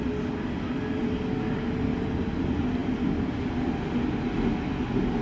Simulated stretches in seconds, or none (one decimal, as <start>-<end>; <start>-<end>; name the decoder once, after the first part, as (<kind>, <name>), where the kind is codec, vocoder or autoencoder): none